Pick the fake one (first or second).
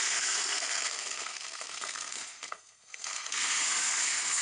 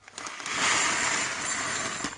first